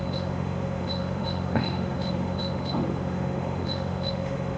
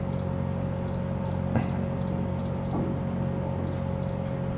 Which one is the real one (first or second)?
second